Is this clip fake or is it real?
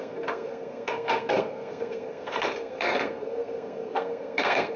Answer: fake